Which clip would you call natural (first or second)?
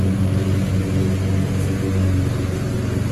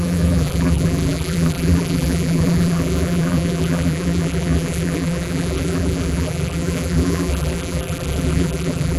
first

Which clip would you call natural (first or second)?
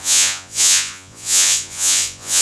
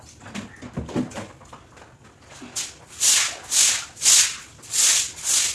second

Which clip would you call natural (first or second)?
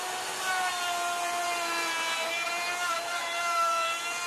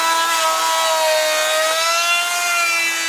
second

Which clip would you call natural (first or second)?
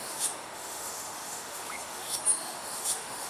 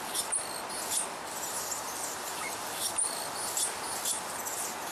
second